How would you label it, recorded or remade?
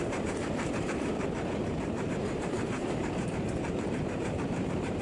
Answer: remade